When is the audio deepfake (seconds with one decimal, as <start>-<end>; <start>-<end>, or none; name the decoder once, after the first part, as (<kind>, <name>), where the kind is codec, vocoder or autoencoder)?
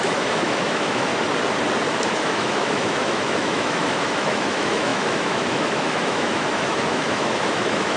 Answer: 0.0-1.1 (autoencoder, DAC-VAE); 1.9-8.0